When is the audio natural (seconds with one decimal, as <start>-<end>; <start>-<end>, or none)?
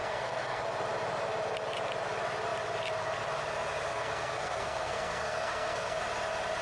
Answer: 0.6-3.9; 6.0-6.6